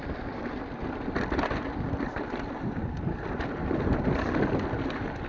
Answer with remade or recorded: recorded